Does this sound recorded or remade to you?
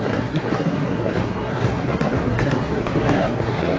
remade